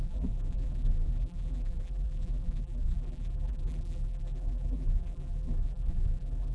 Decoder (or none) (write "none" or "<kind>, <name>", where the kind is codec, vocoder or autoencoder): vocoder, BigVGAN v2